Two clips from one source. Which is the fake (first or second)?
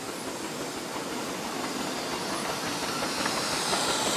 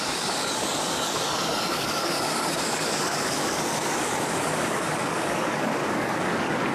second